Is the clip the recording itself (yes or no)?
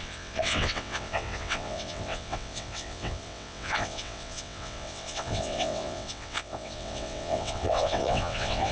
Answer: no